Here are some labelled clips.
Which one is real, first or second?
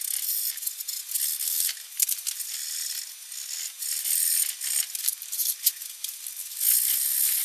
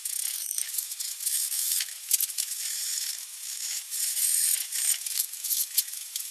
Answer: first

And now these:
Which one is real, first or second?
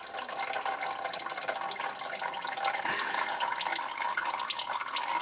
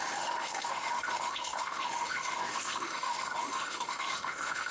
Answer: first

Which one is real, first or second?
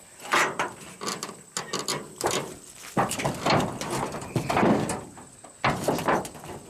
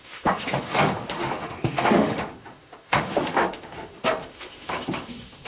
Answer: first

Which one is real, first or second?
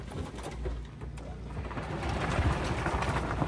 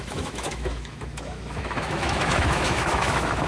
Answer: first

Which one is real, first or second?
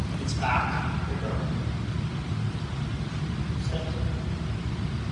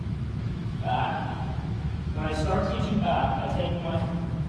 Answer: first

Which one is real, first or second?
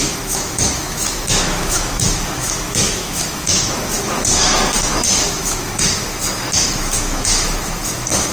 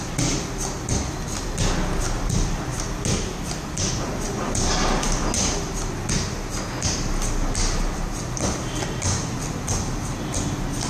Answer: second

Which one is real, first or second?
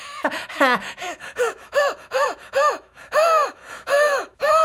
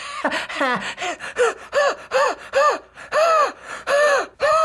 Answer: second